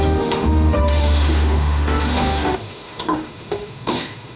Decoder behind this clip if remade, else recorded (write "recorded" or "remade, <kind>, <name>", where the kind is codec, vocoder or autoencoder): remade, autoencoder, DAC-VAE